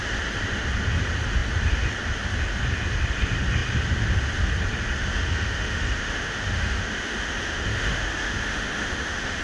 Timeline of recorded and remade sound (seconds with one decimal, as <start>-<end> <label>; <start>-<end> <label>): 0.0-5.3 recorded; 5.3-9.4 remade